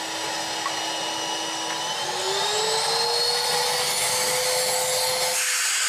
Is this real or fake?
real